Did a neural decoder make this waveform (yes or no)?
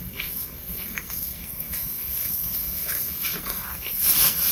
yes